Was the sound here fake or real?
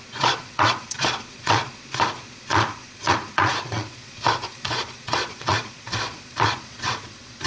fake